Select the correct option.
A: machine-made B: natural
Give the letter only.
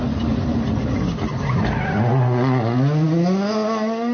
B